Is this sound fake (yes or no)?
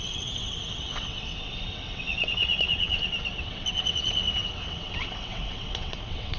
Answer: yes